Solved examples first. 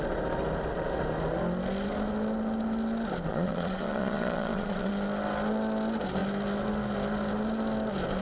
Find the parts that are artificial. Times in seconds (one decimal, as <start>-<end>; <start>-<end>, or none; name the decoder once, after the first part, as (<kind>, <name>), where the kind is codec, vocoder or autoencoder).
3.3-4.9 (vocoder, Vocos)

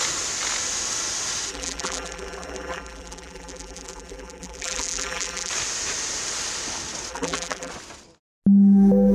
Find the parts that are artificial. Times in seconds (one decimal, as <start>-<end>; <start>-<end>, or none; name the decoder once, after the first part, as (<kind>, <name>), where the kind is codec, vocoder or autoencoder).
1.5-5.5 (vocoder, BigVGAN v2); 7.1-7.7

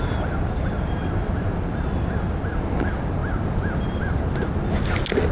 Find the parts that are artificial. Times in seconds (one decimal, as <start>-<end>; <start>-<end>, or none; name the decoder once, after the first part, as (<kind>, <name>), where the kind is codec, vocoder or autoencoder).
none